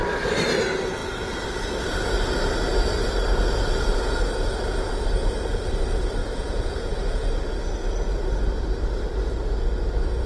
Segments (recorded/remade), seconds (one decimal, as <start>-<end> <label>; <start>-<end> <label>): 0.0-6.2 recorded; 6.2-6.9 remade; 6.9-10.3 recorded